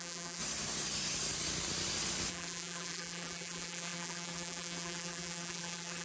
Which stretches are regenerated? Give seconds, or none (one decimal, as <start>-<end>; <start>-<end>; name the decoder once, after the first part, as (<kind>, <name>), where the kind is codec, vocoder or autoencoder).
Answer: 0.0-0.4 (vocoder, BigVGAN v2); 2.3-6.0